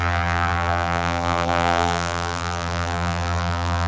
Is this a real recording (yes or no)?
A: no